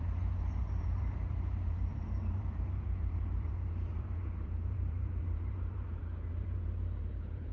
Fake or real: fake